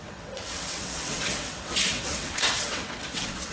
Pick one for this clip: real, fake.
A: fake